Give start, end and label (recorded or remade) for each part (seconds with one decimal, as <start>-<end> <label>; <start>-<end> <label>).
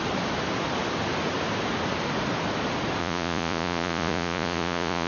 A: 0.0-3.0 recorded; 3.0-5.1 remade